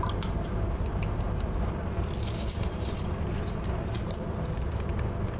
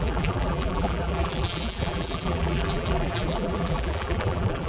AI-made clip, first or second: second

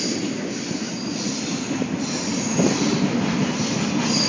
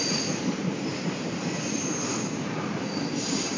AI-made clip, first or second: second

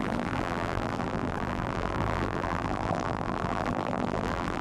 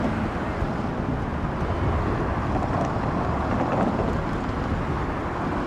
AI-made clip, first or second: first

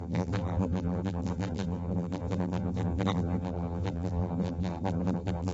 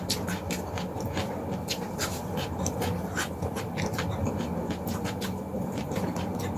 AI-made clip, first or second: first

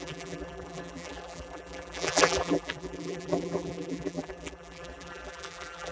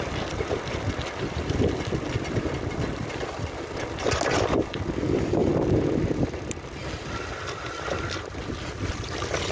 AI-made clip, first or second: first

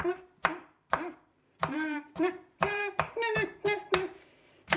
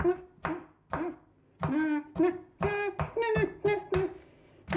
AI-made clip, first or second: first